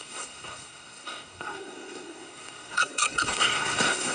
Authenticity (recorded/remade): remade